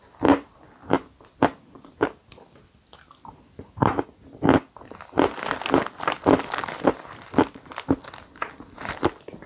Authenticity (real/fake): real